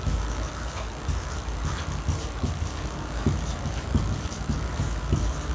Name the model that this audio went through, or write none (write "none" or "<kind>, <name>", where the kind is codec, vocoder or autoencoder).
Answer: codec, DAC